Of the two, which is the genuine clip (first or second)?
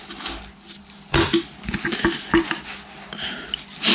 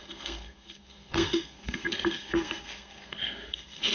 first